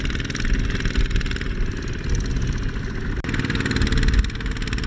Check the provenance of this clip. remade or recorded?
recorded